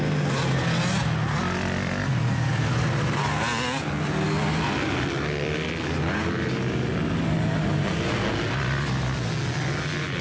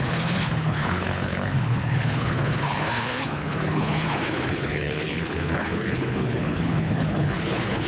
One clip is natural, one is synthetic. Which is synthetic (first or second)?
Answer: second